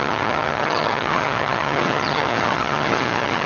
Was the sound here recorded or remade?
remade